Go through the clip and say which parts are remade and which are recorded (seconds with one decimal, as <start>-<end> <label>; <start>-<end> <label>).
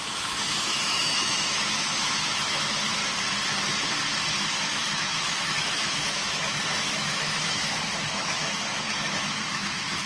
0.0-3.0 remade; 3.0-4.4 recorded; 4.4-10.1 remade